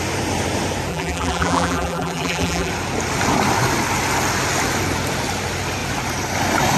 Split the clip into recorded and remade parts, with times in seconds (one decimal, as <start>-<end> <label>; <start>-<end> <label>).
0.0-0.9 recorded; 0.9-2.7 remade; 2.7-6.8 recorded